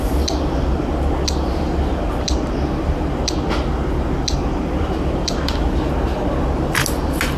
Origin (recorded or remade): recorded